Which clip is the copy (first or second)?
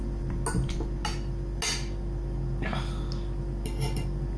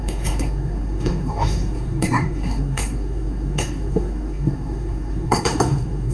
second